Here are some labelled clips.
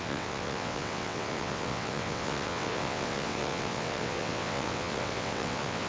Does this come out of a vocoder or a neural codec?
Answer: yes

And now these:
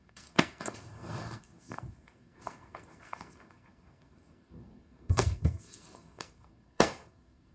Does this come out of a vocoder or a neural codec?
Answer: yes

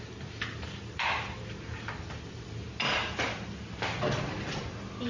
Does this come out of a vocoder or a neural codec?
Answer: no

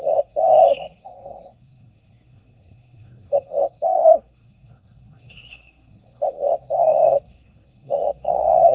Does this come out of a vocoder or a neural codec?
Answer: yes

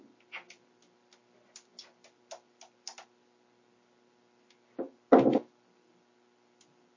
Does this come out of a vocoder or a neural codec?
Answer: no